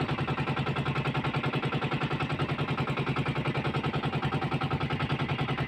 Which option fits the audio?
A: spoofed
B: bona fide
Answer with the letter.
B